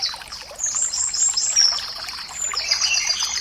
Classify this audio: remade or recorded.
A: recorded